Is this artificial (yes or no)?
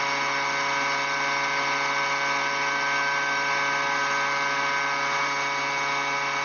no